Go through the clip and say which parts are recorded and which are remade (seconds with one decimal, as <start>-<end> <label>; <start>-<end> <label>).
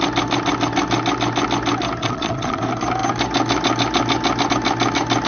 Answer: 0.0-2.0 recorded; 2.0-2.6 remade; 2.6-5.3 recorded